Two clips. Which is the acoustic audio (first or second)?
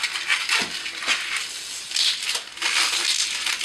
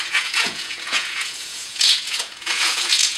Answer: first